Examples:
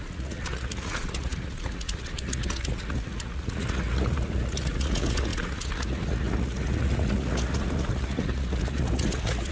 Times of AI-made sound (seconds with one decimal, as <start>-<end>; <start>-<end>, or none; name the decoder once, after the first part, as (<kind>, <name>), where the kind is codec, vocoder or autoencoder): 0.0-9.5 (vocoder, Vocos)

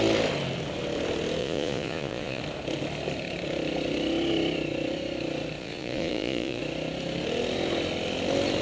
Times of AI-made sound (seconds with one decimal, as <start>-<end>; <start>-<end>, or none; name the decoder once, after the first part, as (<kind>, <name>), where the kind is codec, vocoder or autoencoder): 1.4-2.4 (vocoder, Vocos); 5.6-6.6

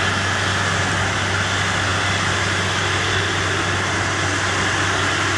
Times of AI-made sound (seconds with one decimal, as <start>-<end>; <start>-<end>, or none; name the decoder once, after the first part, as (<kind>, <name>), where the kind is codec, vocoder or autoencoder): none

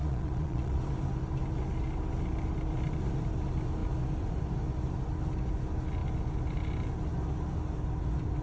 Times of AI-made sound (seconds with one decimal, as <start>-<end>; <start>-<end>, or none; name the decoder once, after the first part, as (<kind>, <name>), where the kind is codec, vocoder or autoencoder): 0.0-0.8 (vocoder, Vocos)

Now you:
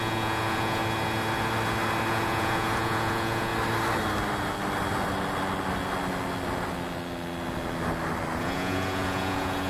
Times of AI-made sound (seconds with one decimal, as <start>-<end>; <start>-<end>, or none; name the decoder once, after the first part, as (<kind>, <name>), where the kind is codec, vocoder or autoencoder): 0.0-0.8 (vocoder, Vocos); 2.1-3.5; 8.4-9.7

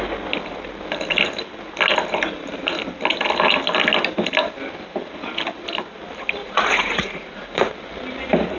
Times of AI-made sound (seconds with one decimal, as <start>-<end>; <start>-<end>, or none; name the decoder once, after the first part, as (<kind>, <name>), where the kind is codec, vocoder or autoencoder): 6.4-7.7 (vocoder, Vocos)

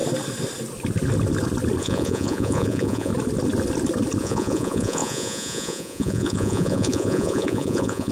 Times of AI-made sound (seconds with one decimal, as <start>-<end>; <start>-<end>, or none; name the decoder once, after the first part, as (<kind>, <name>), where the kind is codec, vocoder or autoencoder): 1.8-3.1 (vocoder, Vocos); 4.2-8.1

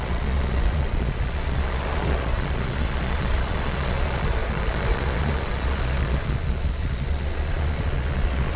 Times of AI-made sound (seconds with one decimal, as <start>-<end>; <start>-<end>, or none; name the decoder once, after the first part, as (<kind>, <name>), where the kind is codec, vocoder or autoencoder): 0.0-8.6 (vocoder, Vocos)